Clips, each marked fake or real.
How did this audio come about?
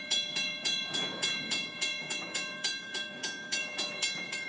fake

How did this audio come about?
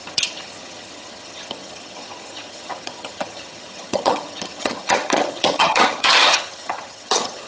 fake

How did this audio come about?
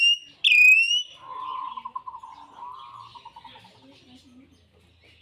real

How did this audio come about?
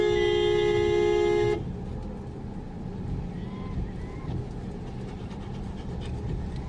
real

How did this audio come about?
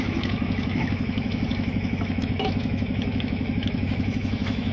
fake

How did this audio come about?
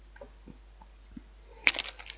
real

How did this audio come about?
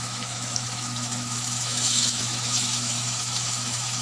fake